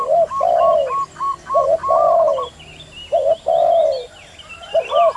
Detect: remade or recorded recorded